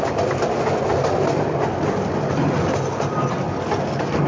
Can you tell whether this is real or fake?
real